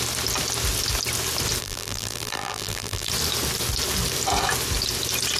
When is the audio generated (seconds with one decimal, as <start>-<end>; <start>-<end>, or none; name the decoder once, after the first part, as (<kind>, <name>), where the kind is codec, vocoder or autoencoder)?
1.6-3.1 (vocoder, BigVGAN v2)

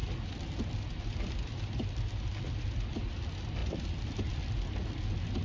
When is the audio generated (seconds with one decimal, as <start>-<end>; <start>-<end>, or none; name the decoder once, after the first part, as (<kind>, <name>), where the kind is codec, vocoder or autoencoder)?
0.0-1.9 (vocoder, BigVGAN v2); 3.6-4.5

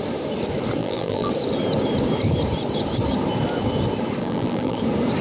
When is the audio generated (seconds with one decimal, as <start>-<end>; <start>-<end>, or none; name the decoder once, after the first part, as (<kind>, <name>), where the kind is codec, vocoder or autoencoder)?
0.8-1.3 (vocoder, BigVGAN v2); 4.2-4.8

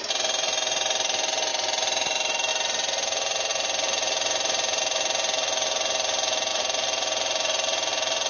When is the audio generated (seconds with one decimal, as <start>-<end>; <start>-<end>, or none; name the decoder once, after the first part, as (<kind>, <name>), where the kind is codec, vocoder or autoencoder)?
1.5-2.5 (vocoder, BigVGAN v2); 3.5-4.8; 6.5-7.9

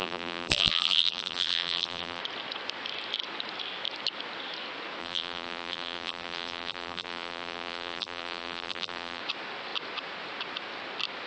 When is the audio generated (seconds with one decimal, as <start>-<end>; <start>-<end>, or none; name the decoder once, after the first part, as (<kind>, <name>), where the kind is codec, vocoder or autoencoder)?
0.0-2.2 (vocoder, BigVGAN v2); 5.0-9.2

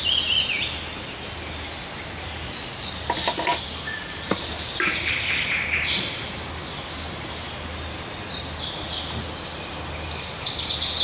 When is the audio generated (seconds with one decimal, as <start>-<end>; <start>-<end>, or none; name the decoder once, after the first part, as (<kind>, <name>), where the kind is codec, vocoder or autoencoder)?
3.5-4.4 (vocoder, BigVGAN v2)